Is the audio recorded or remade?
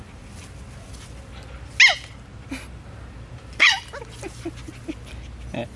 recorded